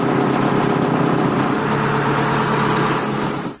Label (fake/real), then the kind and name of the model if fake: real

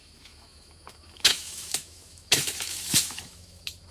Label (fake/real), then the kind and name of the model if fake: fake, autoencoder, DAC-VAE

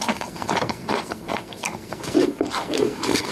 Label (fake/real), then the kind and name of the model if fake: fake, codec, SNAC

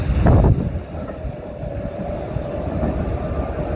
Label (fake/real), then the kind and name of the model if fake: real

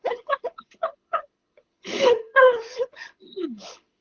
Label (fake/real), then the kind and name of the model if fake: fake, codec, HILCodec